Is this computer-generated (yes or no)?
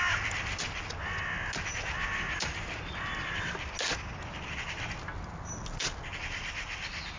no